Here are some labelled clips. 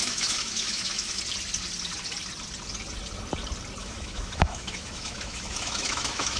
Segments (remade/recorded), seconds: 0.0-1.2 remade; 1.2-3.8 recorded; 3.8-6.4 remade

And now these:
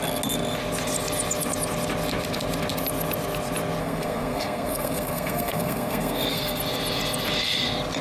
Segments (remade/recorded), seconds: 0.0-3.8 recorded; 3.8-6.6 remade; 6.6-8.0 recorded

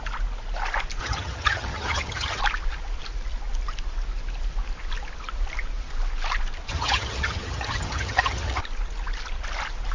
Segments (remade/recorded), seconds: 0.0-1.0 recorded; 1.0-2.4 remade; 2.4-6.7 recorded; 6.7-8.6 remade; 8.6-9.9 recorded

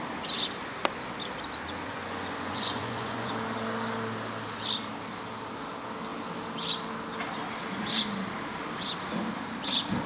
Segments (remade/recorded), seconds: 0.0-1.9 recorded; 1.9-3.3 remade; 3.3-10.1 recorded

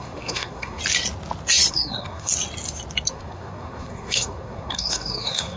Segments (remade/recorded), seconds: 0.0-0.8 remade; 0.8-1.7 recorded; 1.7-2.3 remade; 2.3-3.1 recorded; 3.1-5.6 remade